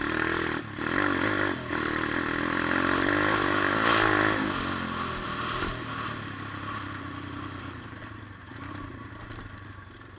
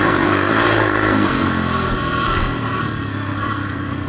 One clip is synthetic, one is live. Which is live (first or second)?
first